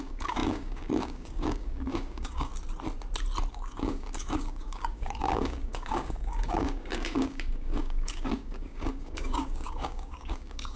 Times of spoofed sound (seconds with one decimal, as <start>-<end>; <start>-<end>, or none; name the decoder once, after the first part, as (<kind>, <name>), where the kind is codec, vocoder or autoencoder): 0.0-2.5 (codec, DAC); 3.5-10.8